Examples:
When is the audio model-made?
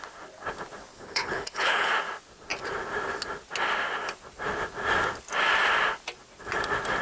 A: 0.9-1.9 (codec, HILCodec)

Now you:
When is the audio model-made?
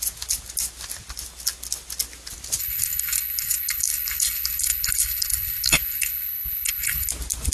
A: 2.6-7.1 (codec, HILCodec)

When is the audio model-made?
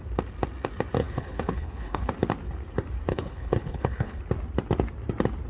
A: 1.0-2.1 (codec, HILCodec); 3.1-4.2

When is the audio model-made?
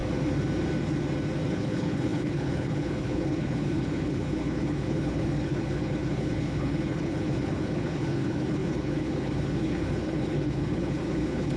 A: 1.5-11.6 (codec, HILCodec)